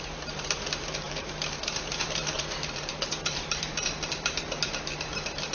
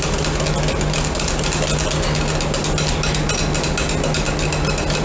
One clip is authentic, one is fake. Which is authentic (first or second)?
second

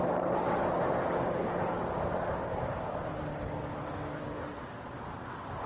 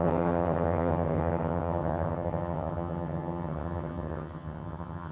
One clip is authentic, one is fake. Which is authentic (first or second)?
first